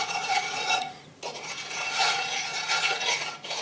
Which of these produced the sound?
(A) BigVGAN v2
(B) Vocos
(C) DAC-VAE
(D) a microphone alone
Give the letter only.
B